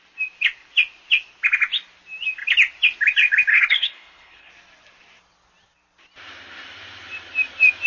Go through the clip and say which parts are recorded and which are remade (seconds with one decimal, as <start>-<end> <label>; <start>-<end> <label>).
0.0-3.5 recorded; 3.5-4.5 remade; 4.5-7.9 recorded